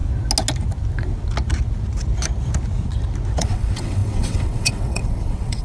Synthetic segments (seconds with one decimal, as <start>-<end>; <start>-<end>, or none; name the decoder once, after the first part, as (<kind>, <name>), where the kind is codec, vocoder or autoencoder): 3.4-5.6 (vocoder, WaveNeXt)

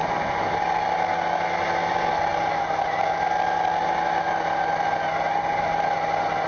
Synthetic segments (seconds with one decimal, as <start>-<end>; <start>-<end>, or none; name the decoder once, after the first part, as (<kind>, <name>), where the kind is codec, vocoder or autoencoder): none

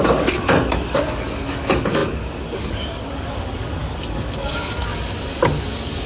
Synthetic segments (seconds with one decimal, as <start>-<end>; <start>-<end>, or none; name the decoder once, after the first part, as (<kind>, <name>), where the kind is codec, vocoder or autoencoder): 0.0-6.1 (codec, DAC)

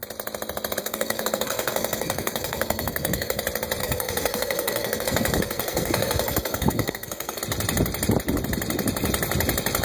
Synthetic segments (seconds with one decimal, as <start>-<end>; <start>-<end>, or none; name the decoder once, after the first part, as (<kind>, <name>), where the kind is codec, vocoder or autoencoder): 0.8-3.4 (codec, SNAC); 3.8-7.4

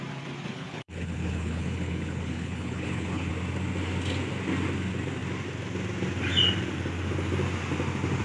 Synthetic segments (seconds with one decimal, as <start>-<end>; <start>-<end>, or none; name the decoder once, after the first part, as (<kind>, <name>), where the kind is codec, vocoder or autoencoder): 0.5-3.3 (codec, HILCodec)

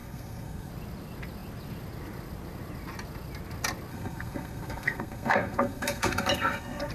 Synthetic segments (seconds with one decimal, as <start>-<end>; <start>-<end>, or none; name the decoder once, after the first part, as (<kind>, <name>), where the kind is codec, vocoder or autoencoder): 0.0-0.7 (codec, SNAC); 3.9-6.9